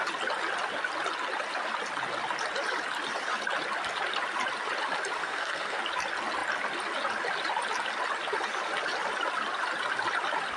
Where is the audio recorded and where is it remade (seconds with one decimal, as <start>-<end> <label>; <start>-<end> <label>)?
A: 0.0-5.2 recorded; 5.2-5.8 remade; 5.8-10.6 recorded